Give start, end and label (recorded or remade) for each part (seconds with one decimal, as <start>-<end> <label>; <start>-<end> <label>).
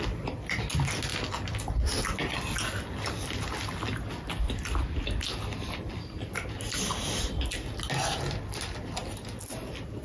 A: 0.0-10.0 recorded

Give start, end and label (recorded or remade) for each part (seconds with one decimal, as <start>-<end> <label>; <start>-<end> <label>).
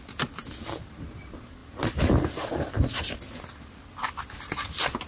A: 0.0-5.1 recorded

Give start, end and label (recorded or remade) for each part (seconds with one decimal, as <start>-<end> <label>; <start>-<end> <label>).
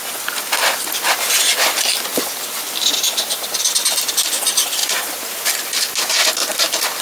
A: 0.0-4.8 recorded; 4.8-5.7 remade; 5.7-7.0 recorded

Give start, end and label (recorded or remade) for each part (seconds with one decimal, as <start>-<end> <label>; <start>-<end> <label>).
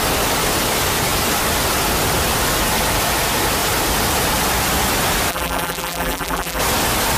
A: 0.0-5.3 recorded; 5.3-6.6 remade; 6.6-7.2 recorded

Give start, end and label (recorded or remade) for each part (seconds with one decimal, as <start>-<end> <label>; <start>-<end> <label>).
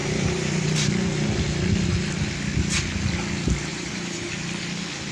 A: 0.0-0.9 remade; 0.9-3.7 recorded; 3.7-4.3 remade; 4.3-5.1 recorded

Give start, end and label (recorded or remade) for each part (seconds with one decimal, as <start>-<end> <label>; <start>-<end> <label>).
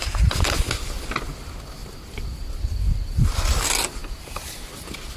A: 0.0-1.8 recorded; 1.8-3.6 remade; 3.6-4.0 recorded; 4.0-4.7 remade; 4.7-5.2 recorded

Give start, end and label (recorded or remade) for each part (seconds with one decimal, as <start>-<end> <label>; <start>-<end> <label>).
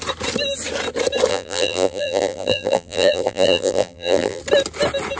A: 0.0-1.3 recorded; 1.3-4.4 remade; 4.4-5.2 recorded